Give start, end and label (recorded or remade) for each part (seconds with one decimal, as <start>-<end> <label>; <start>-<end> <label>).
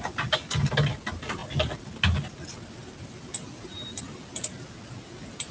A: 0.0-5.5 recorded